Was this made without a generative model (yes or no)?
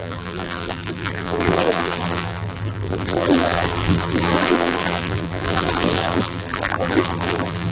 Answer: no